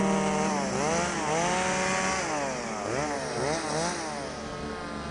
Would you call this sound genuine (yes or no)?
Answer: yes